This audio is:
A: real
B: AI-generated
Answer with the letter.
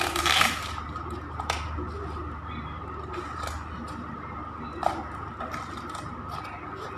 B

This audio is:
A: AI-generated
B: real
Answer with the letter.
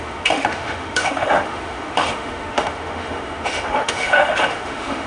A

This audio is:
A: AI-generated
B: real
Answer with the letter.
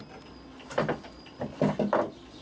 B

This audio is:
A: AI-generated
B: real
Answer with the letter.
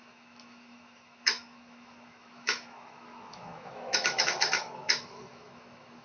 A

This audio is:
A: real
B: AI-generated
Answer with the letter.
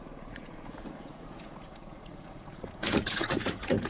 B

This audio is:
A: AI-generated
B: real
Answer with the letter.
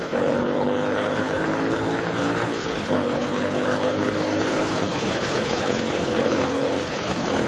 A